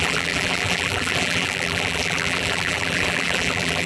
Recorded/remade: remade